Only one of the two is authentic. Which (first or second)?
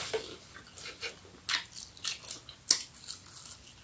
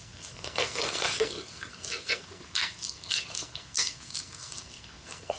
first